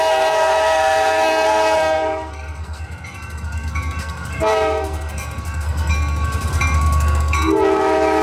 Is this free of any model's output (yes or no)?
no